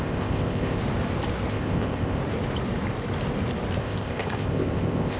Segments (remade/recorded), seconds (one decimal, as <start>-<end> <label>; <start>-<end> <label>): 0.0-0.8 remade; 0.8-1.5 recorded; 1.5-2.2 remade; 2.2-3.8 recorded; 3.8-5.2 remade